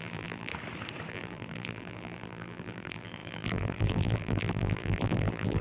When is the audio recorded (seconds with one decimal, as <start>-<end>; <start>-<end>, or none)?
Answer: 0.5-1.1